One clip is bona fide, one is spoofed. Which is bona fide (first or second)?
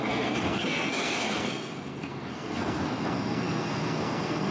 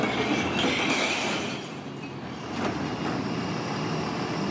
second